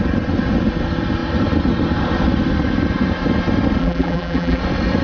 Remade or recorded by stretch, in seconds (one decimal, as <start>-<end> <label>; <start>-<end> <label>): 0.0-3.8 recorded; 3.8-4.6 remade; 4.6-5.0 recorded